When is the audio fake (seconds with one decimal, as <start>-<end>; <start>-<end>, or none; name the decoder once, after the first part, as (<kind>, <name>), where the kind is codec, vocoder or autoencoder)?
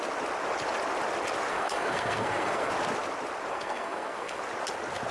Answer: 1.5-2.7 (codec, SNAC); 3.5-4.4